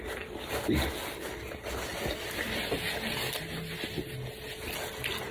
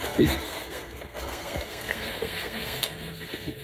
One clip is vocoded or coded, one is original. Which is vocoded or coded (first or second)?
second